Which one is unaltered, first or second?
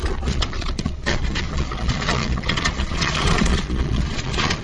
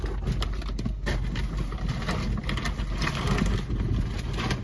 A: second